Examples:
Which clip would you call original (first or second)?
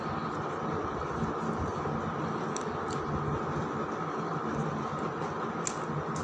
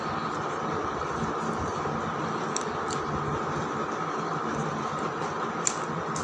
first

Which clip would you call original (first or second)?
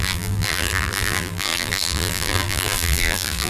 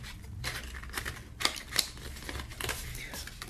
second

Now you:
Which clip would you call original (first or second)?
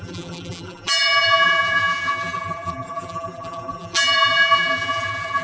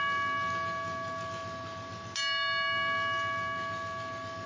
second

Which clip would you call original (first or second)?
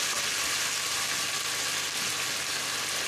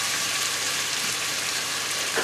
first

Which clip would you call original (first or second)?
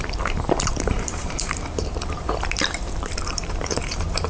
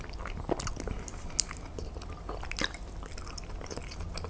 second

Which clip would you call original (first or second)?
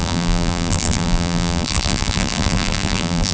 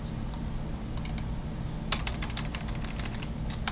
second